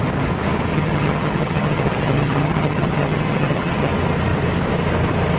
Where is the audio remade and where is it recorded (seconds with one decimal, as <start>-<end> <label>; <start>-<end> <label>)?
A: 0.0-0.7 recorded; 0.7-3.9 remade; 3.9-5.4 recorded